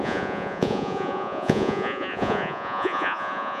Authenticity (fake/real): fake